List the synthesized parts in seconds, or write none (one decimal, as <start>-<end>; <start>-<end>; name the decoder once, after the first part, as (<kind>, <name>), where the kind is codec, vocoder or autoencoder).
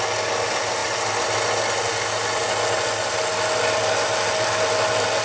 none